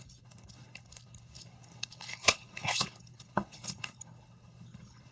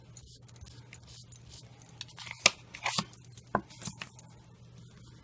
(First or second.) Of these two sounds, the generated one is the first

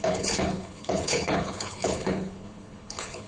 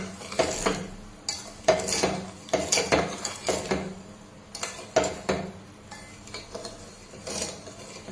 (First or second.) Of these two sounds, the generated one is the first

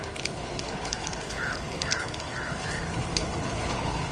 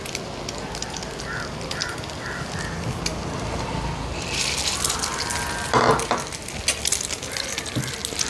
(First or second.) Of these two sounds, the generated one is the first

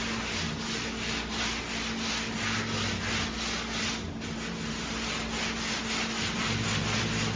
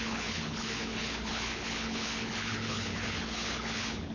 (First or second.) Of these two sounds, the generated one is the second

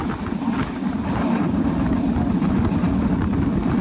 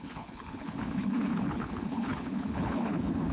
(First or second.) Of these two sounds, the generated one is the second